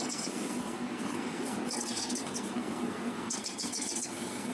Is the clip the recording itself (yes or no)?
no